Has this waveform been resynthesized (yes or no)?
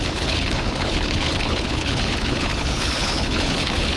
yes